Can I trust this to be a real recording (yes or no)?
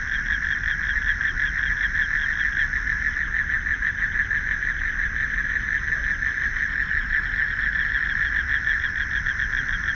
yes